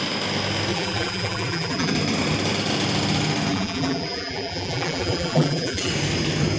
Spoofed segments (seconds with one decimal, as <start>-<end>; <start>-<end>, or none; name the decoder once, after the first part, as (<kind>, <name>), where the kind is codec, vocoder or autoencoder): 0.7-1.9 (vocoder, BigVGAN v2); 3.5-5.9